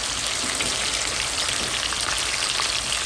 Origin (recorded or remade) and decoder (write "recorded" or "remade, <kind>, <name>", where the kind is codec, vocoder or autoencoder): recorded